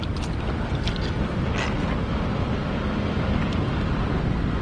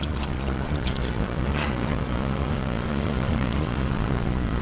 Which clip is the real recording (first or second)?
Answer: first